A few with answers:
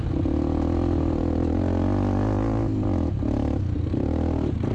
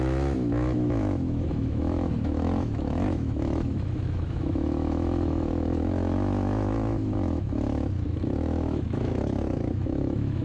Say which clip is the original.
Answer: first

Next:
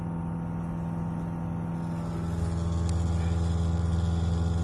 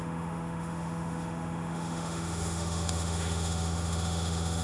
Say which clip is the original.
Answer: first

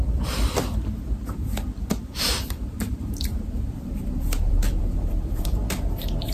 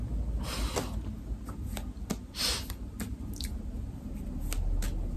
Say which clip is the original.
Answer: second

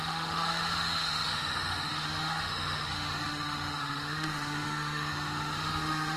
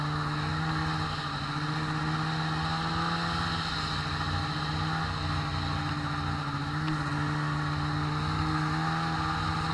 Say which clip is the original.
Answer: second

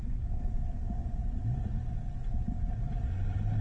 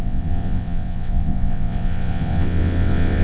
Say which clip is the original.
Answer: first